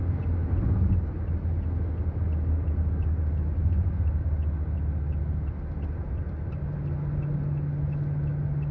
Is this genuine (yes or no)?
yes